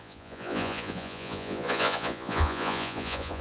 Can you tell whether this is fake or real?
fake